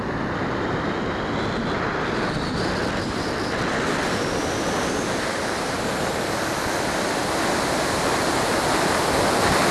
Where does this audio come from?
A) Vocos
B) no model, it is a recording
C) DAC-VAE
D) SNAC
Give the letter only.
B